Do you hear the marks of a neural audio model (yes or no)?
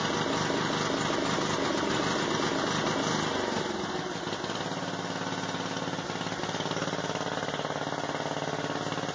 no